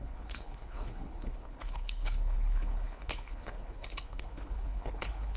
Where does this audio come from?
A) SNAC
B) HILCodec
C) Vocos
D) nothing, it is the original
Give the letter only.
B